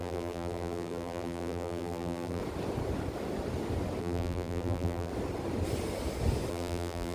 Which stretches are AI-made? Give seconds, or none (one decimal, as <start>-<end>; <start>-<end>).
0.0-2.4; 4.0-5.1; 6.5-7.1